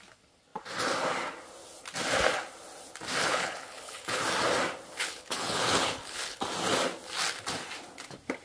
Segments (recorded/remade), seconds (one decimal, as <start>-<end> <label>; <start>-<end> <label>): 0.0-3.2 recorded; 3.2-4.2 remade; 4.2-4.9 recorded; 4.9-6.4 remade; 6.4-8.4 recorded